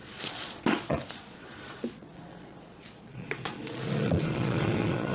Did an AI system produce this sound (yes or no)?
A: yes